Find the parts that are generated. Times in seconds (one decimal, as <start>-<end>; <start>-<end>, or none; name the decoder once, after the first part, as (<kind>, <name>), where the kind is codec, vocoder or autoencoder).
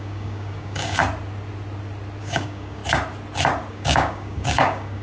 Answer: 0.0-1.0 (codec, DAC); 2.2-2.8; 3.7-5.0